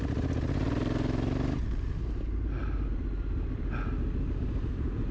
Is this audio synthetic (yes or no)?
no